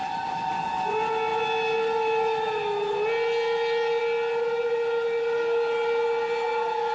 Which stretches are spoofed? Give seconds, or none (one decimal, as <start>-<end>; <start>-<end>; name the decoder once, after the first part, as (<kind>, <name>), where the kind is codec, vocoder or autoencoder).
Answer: none